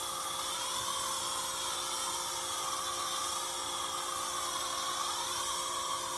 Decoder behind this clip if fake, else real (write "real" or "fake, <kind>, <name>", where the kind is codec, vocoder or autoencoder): real